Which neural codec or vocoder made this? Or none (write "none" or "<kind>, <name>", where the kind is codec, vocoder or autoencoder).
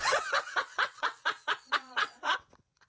vocoder, WaveNeXt